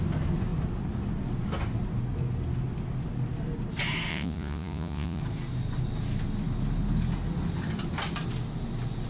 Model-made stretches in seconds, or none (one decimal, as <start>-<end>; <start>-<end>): 4.1-5.2